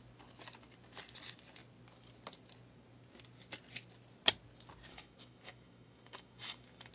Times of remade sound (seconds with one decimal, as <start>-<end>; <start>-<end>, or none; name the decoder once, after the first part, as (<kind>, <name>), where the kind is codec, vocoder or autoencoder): 4.9-6.9 (autoencoder, DAC-VAE)